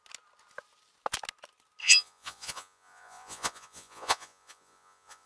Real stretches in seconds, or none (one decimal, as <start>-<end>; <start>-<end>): 0.0-1.8